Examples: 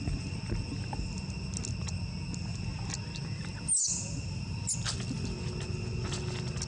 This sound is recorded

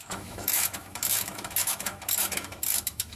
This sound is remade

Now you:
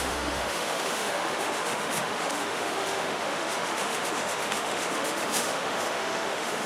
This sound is remade